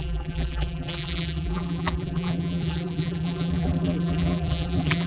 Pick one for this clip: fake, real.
fake